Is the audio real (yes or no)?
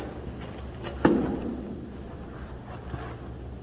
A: yes